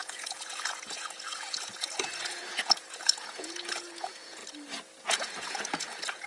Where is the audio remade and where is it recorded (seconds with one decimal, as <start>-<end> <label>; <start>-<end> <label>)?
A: 0.0-4.4 remade; 4.4-5.0 recorded; 5.0-6.3 remade